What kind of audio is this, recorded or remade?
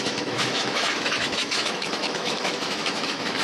remade